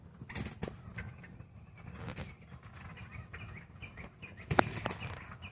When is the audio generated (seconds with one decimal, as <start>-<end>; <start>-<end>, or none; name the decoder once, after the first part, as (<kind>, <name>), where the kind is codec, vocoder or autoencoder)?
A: none